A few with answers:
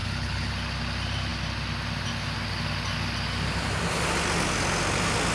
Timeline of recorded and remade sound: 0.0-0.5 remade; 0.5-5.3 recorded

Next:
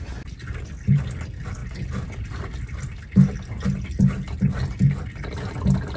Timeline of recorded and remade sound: 0.0-6.0 recorded

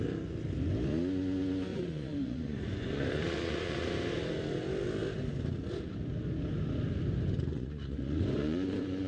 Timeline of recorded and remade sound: 0.0-1.7 recorded; 1.7-3.9 remade; 3.9-7.5 recorded; 7.5-9.1 remade

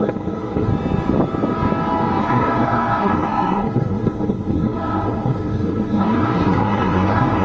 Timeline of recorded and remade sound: 0.0-0.7 remade; 0.7-2.2 recorded; 2.2-7.4 remade